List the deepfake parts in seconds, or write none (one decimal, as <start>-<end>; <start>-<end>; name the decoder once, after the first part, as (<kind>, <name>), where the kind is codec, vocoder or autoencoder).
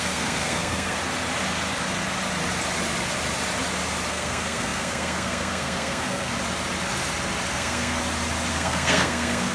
0.0-1.0 (codec, SNAC); 4.1-6.3; 7.5-8.0; 8.5-9.5